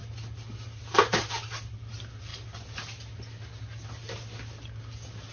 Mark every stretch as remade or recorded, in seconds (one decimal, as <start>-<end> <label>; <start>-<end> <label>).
0.0-5.3 recorded